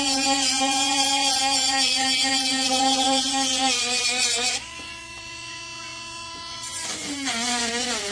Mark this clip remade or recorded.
remade